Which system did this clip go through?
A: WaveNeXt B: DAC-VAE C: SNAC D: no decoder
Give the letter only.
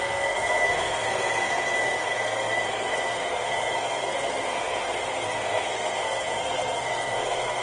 C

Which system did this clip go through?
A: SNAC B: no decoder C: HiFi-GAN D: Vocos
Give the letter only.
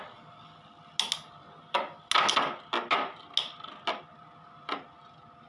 B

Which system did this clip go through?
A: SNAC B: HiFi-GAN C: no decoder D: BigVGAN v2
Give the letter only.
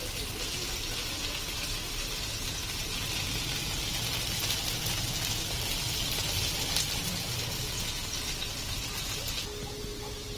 C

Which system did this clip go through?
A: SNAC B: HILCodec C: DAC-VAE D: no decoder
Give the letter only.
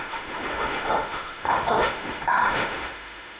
C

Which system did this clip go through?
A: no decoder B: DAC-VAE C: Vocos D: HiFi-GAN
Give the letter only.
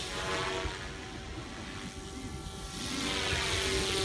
A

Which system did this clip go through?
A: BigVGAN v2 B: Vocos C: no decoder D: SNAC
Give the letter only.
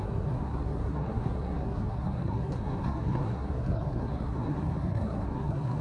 D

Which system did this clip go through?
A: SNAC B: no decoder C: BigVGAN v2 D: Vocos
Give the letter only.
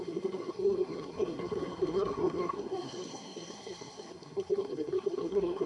A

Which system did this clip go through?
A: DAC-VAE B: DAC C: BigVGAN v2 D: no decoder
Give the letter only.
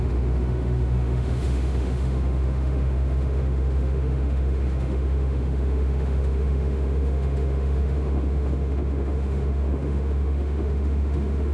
A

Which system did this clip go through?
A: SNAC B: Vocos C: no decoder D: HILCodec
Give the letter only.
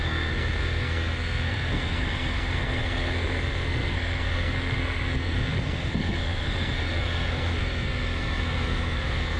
A